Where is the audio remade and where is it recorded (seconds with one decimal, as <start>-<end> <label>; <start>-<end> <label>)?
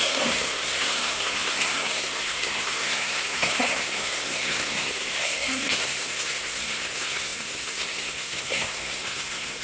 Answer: 0.0-9.6 remade